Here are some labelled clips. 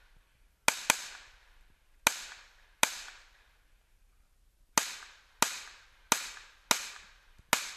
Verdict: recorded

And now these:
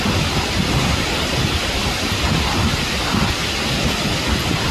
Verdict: recorded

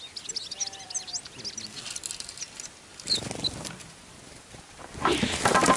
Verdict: recorded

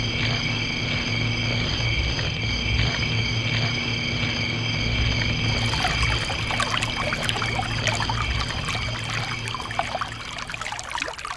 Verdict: recorded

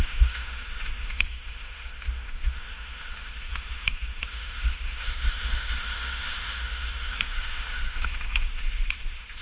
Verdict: remade